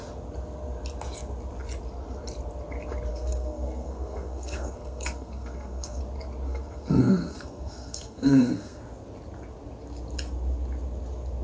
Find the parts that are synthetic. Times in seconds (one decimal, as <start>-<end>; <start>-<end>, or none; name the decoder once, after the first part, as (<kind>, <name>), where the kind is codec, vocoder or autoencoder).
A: 3.1-6.0 (codec, SNAC); 6.5-8.8